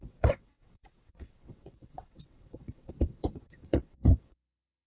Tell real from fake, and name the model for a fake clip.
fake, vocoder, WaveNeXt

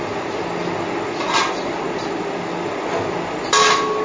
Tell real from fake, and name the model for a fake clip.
real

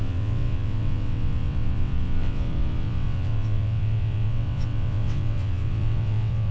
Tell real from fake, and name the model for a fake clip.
fake, vocoder, WaveNeXt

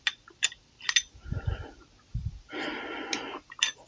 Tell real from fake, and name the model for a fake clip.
real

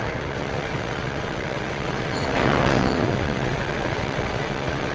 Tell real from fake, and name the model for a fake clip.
fake, vocoder, WaveNeXt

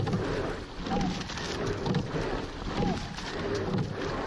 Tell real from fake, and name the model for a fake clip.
real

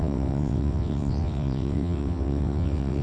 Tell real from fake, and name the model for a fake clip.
fake, vocoder, WaveNeXt